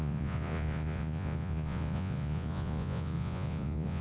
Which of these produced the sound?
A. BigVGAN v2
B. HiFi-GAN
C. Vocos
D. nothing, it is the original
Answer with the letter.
C